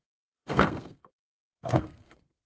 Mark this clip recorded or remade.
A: remade